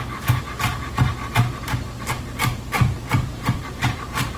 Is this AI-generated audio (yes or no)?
yes